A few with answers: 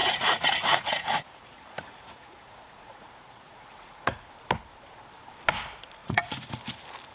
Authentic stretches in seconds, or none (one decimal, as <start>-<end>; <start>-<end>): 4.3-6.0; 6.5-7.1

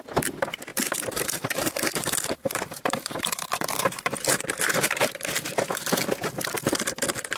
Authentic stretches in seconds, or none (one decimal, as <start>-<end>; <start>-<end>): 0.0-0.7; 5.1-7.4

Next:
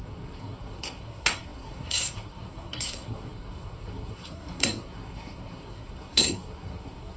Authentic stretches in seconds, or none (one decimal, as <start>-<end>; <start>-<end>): none

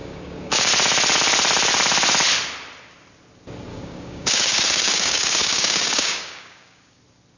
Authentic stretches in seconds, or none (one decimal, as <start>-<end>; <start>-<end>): 0.7-3.7; 7.0-7.4